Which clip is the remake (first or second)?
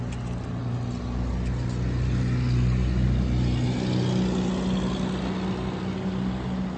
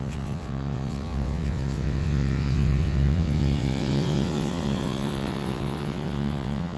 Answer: second